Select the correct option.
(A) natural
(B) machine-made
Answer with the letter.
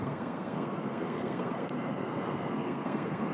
B